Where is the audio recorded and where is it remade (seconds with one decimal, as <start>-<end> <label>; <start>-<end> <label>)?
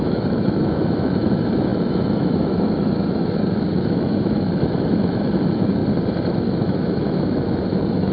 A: 0.0-5.8 remade; 5.8-6.4 recorded; 6.4-8.1 remade